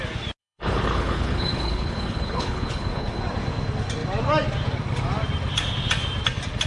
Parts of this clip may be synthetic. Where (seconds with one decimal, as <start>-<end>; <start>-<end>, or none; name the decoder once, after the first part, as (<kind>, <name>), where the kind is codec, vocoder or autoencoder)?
0.4-3.2 (codec, HILCodec)